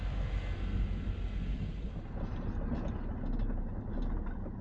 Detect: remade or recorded recorded